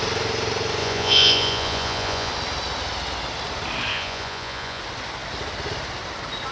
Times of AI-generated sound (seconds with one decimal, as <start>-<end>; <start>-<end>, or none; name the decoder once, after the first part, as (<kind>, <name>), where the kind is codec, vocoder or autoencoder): 0.8-2.3 (vocoder, Vocos); 3.9-4.8